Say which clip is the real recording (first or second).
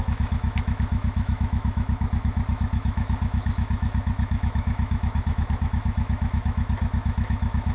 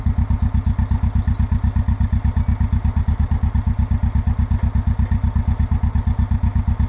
second